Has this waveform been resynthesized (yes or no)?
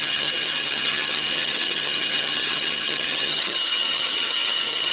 yes